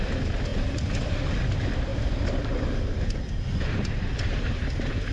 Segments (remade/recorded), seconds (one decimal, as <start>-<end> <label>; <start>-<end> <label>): 0.0-0.5 recorded; 0.5-1.3 remade; 1.3-1.9 recorded; 1.9-4.5 remade; 4.5-5.1 recorded